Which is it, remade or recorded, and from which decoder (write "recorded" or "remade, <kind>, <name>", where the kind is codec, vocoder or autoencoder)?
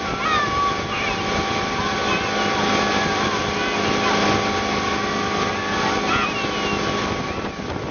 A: recorded